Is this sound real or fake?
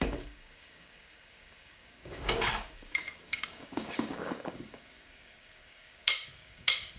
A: fake